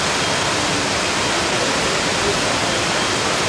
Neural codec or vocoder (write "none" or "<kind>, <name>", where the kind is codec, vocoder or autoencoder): none